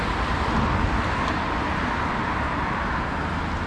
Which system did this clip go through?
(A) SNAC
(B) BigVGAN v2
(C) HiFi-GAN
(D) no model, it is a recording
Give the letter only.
D